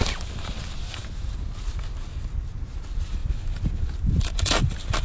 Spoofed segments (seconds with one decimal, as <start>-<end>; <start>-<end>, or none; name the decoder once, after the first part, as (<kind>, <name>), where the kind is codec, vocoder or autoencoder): none